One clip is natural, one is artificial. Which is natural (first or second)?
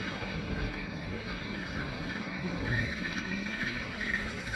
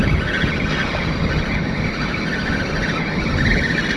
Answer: second